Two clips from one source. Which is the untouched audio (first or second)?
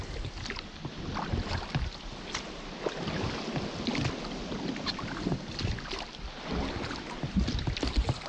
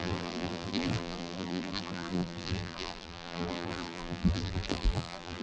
first